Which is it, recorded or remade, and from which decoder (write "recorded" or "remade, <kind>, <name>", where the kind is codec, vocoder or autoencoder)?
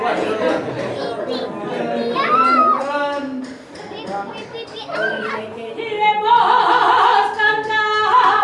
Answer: recorded